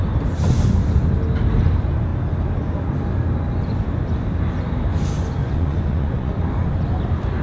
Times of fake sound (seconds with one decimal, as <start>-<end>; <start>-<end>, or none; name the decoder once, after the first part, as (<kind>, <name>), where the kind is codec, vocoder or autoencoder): 5.4-6.3 (vocoder, Vocos)